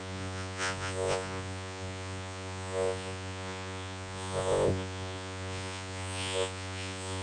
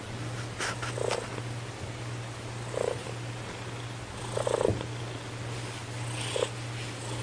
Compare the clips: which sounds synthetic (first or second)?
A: first